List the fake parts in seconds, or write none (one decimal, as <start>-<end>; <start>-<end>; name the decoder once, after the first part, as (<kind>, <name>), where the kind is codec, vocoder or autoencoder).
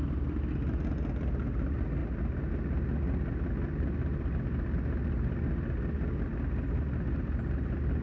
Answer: 2.0-2.5 (vocoder, BigVGAN v2)